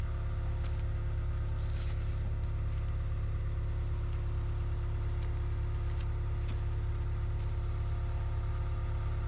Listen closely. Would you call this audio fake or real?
real